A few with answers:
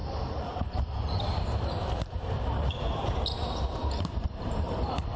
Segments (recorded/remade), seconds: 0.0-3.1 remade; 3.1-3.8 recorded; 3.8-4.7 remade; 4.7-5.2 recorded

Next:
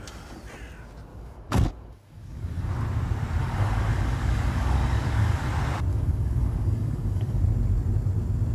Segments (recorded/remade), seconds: 0.0-1.1 recorded; 1.1-2.7 remade; 2.7-3.4 recorded; 3.4-5.5 remade; 5.5-5.9 recorded; 5.9-7.4 remade; 7.4-8.5 recorded

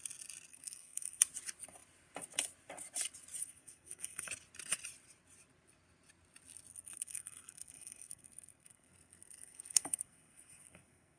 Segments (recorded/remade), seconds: 0.0-0.5 recorded; 0.5-1.2 remade; 1.2-3.4 recorded; 3.4-4.3 remade; 4.3-6.7 recorded; 6.7-11.2 remade